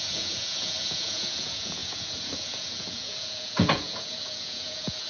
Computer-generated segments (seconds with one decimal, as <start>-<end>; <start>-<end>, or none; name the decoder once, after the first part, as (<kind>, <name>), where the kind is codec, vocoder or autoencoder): 0.0-5.1 (vocoder, Vocos)